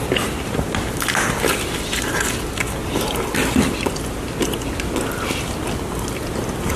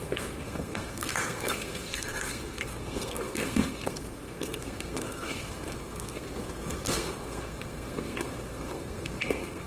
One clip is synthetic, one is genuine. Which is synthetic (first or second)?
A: second